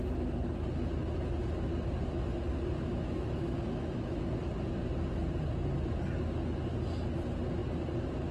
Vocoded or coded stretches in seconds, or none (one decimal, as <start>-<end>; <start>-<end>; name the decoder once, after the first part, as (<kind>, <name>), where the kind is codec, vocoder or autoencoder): 2.9-4.5 (autoencoder, DAC-VAE)